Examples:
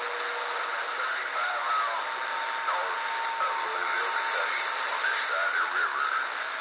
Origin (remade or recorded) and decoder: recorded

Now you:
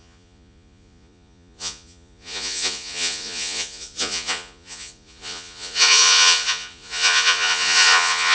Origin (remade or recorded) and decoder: remade, vocoder, Vocos